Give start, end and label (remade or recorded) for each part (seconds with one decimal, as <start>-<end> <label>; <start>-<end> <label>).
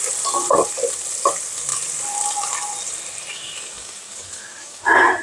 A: 0.0-3.3 recorded; 3.3-4.8 remade; 4.8-5.2 recorded